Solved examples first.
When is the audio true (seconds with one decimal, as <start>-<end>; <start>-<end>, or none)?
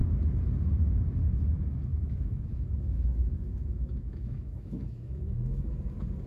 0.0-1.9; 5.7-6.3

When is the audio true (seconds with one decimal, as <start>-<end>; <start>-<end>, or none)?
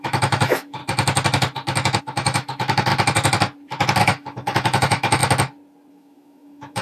0.8-2.0; 2.9-4.0; 5.2-5.9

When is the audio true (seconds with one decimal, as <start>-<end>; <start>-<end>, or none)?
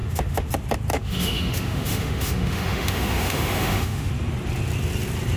0.5-0.9; 4.1-5.4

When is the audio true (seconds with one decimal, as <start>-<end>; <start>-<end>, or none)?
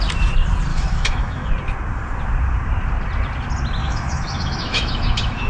0.0-0.7; 1.5-3.8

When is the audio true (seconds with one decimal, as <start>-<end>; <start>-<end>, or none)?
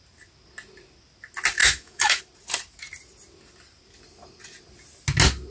0.0-1.6; 2.2-5.5